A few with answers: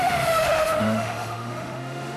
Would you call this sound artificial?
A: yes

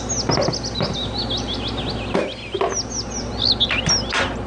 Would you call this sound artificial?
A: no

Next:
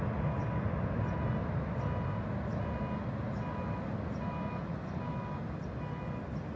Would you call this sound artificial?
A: no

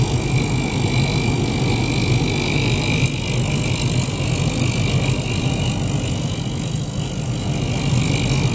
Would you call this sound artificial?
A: no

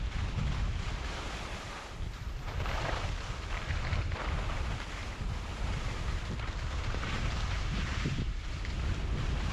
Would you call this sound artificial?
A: no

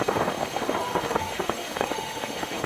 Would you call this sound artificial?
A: yes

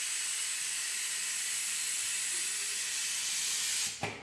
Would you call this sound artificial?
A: no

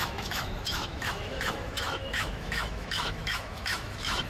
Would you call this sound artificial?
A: yes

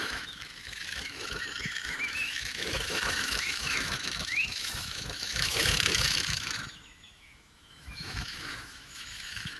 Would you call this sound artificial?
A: yes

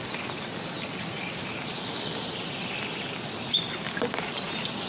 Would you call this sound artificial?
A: no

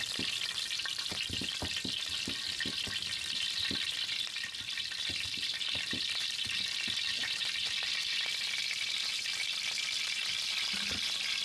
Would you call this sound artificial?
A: no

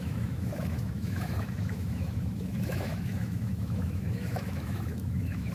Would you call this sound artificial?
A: yes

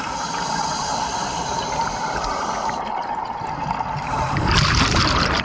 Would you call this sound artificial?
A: no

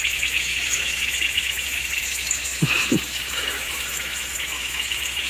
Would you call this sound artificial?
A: yes